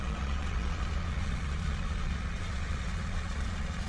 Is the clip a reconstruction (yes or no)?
yes